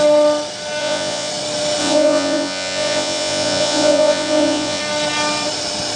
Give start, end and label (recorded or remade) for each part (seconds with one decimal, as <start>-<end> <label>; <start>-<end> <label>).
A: 0.0-0.8 recorded; 0.8-1.3 remade; 1.3-1.8 recorded; 1.8-4.8 remade; 4.8-6.0 recorded